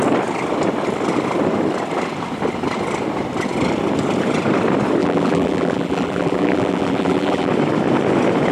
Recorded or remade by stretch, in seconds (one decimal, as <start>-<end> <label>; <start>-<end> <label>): 0.0-5.0 recorded; 5.0-7.5 remade; 7.5-8.5 recorded

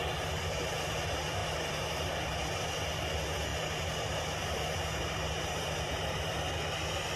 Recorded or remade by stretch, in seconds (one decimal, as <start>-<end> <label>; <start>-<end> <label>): 0.0-1.4 recorded; 1.4-2.1 remade; 2.1-5.6 recorded; 5.6-6.5 remade; 6.5-7.2 recorded

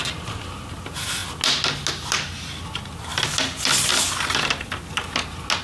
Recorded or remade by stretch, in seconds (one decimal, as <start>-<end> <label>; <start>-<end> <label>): 0.0-3.1 recorded; 3.1-3.9 remade; 3.9-5.6 recorded

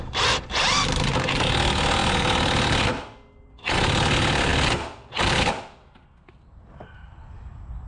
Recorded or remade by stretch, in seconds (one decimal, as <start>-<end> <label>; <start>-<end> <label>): 0.0-7.9 recorded

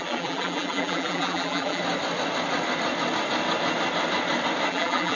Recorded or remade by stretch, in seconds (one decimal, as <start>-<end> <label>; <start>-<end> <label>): 0.0-1.8 remade; 1.8-4.7 recorded; 4.7-5.2 remade